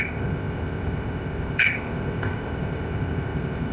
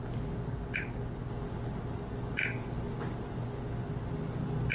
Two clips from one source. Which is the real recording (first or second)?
second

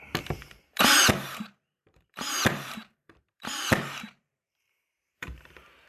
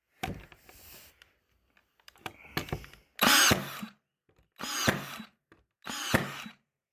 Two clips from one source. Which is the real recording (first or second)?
second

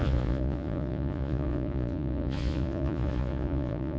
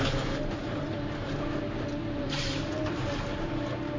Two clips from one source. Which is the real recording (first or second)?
second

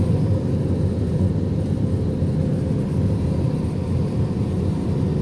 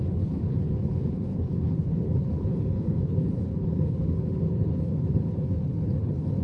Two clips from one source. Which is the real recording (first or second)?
first